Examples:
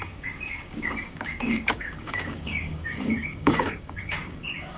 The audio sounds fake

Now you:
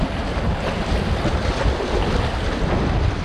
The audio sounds real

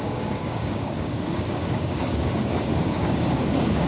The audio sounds fake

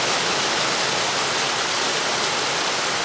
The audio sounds real